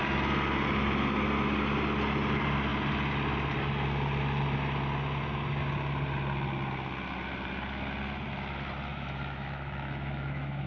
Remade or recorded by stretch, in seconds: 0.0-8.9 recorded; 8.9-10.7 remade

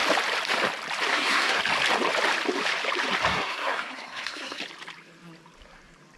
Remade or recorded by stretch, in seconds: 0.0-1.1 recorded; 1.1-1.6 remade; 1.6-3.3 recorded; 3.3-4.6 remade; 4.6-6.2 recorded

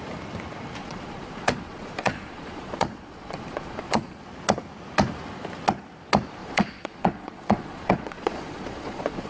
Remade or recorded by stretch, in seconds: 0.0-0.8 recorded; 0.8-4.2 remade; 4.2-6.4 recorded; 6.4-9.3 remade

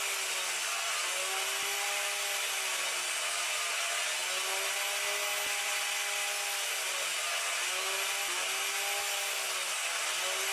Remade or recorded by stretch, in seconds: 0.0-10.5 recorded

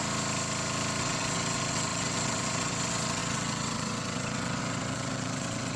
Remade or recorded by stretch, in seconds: 0.0-1.0 recorded; 1.0-5.8 remade

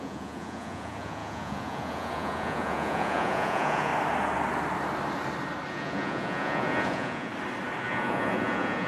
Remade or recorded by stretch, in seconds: 0.0-3.9 remade; 3.9-5.7 recorded; 5.7-7.3 remade; 7.3-7.8 recorded; 7.8-8.9 remade

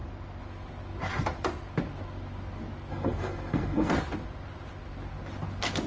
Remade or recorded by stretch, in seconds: 0.0-2.9 recorded; 2.9-3.9 remade; 3.9-5.9 recorded